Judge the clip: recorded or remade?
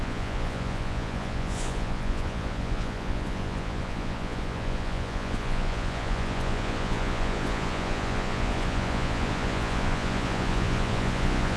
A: remade